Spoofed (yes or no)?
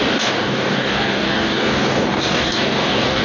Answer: yes